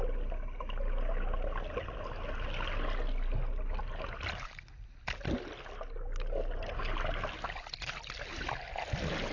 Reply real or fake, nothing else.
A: real